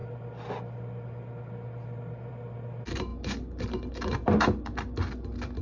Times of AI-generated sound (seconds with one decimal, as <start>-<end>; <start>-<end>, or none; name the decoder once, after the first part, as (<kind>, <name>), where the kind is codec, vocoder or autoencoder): none